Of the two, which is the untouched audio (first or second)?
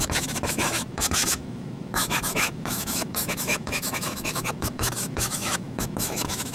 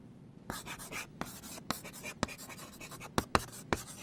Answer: second